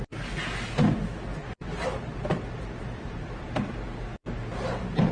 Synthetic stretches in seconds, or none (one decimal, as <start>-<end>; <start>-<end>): 1.4-3.3; 4.2-5.1